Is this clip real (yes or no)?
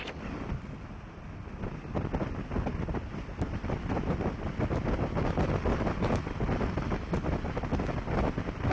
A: yes